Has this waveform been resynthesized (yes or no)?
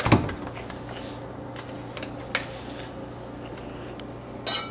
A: no